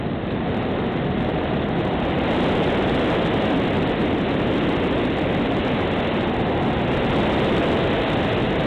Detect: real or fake real